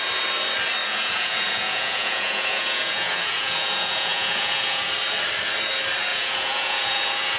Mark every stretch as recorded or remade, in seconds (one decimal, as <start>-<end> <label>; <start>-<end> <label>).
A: 0.0-0.8 recorded; 0.8-4.9 remade; 4.9-6.1 recorded; 6.1-7.4 remade